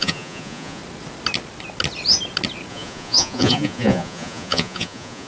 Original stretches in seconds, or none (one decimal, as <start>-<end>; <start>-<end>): 0.8-2.7